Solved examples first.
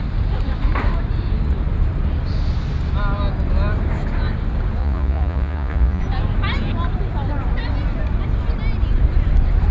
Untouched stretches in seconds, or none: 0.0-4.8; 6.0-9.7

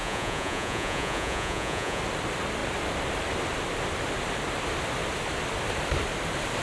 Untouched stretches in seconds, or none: 2.0-6.6

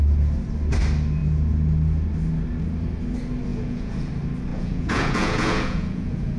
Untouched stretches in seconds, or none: 0.0-3.5; 4.1-4.5

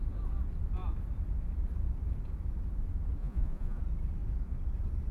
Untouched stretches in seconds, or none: 0.0-3.2; 3.8-5.1

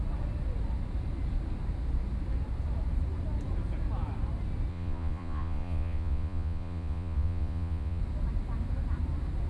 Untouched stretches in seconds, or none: 0.0-4.7; 8.0-9.5

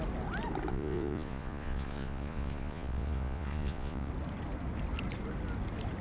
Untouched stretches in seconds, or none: 0.0-0.7; 4.1-6.0

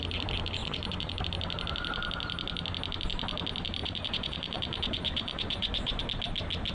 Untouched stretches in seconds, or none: 0.0-0.6; 1.2-3.8; 6.0-6.7